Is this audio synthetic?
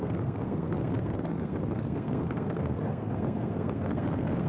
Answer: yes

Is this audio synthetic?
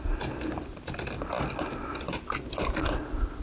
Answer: no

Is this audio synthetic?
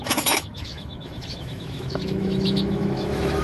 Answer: yes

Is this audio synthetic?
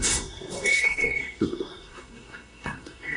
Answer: yes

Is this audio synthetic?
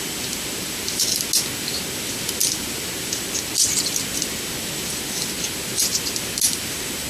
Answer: no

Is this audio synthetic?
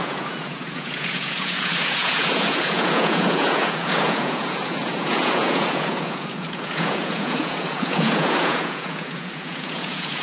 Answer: yes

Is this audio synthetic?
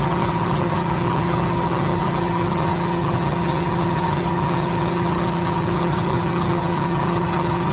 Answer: yes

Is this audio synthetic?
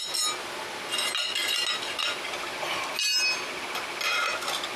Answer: no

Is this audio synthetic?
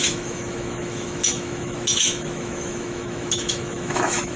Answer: yes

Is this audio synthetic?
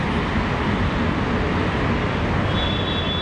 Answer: no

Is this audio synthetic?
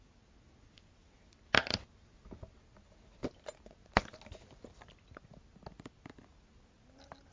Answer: no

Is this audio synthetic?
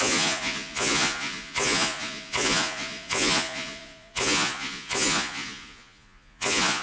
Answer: yes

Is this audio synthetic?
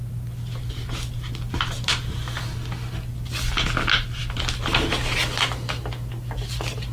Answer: no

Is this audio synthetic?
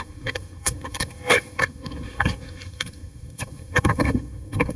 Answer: yes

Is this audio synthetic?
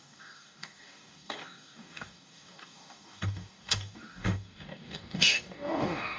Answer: yes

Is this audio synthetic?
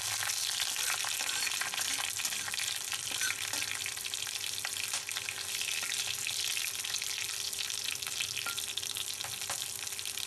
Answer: no